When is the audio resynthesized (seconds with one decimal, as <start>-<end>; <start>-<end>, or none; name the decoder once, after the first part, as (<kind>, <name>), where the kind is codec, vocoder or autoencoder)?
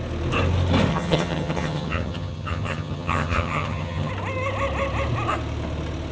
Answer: 0.9-4.1 (vocoder, HiFi-GAN)